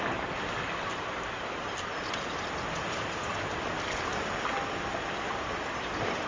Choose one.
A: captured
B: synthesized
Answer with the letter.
A